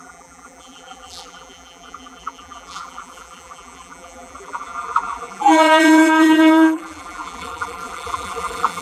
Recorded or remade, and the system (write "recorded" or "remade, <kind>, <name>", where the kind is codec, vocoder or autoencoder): remade, vocoder, BigVGAN v2